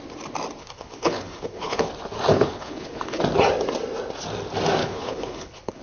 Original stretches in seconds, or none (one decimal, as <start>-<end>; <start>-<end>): 0.0-0.6; 1.9-2.3; 3.2-4.8